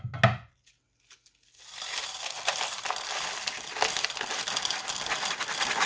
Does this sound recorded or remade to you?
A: recorded